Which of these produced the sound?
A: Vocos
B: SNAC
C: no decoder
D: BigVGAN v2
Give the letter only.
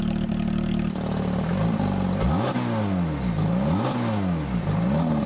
C